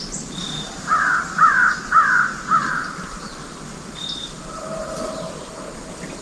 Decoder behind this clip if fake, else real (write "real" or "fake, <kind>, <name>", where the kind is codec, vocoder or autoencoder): real